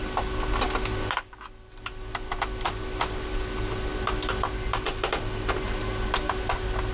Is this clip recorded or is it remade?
recorded